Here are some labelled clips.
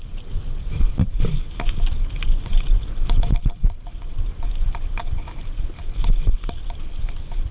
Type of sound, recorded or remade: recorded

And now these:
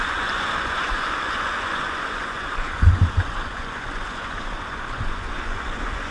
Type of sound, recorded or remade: remade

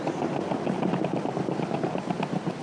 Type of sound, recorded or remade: recorded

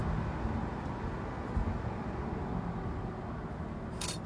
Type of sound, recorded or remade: recorded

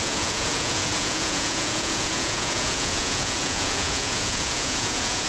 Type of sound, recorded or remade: remade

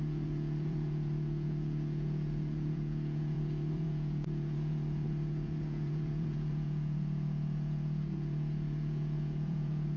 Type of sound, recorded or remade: remade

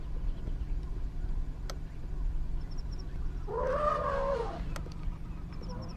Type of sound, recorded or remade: recorded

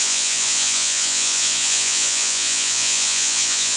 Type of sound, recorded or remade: remade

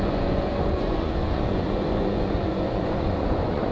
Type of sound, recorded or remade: remade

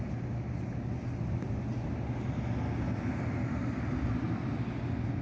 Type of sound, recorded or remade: recorded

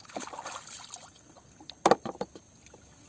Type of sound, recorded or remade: recorded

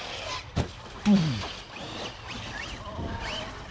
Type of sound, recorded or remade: recorded